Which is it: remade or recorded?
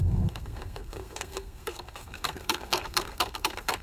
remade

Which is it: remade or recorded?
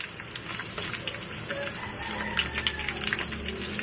recorded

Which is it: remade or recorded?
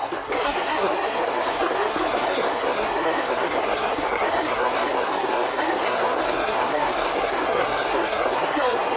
remade